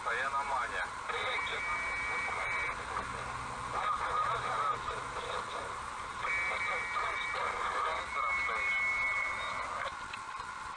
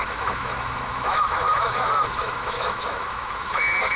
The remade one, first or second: second